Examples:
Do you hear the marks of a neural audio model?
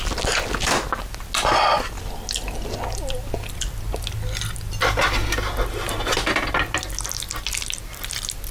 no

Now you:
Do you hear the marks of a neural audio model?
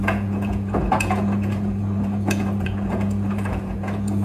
yes